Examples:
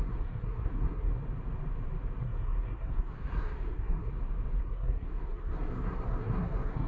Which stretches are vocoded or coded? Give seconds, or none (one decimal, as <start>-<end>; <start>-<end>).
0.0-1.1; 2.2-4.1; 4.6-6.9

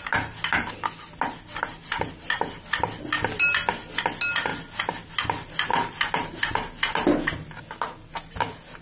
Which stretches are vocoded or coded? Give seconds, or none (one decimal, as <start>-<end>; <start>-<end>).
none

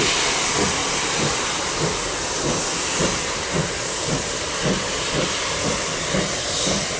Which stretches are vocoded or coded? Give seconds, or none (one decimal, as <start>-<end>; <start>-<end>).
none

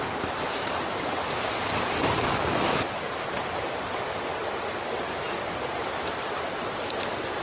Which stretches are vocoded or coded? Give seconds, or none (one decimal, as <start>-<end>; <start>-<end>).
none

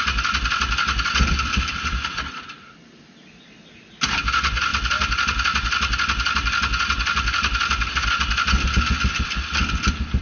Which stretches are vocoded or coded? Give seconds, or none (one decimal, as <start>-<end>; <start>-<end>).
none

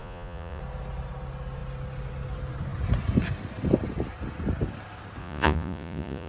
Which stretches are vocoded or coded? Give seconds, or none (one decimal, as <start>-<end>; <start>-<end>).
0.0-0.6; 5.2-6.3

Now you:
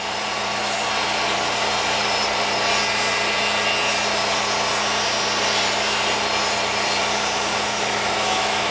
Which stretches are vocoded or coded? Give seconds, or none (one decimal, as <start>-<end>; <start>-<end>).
7.5-8.7